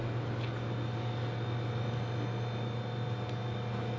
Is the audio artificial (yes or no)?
no